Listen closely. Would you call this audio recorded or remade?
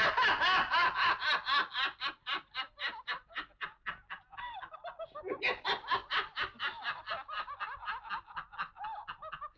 recorded